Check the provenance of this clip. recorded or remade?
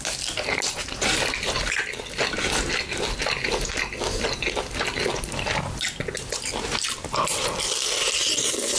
recorded